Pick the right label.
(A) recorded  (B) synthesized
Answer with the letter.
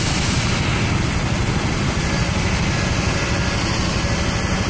A